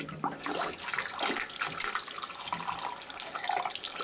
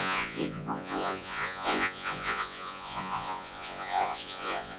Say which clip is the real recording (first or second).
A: first